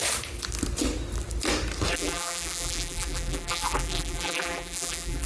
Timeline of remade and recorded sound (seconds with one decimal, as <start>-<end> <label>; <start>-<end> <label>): 0.0-1.9 recorded; 1.9-5.3 remade